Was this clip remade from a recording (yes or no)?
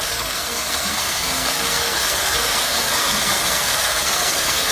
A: yes